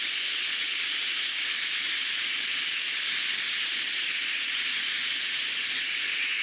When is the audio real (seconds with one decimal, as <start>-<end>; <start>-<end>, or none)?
0.0-6.4